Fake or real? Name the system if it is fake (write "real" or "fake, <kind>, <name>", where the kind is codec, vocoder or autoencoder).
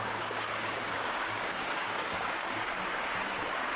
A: fake, codec, DAC